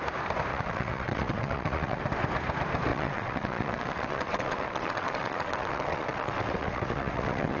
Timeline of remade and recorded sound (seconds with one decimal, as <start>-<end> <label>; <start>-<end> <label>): 0.0-0.5 recorded; 0.5-2.0 remade; 2.0-2.9 recorded; 2.9-7.6 remade